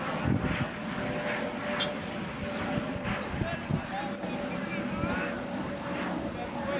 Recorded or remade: recorded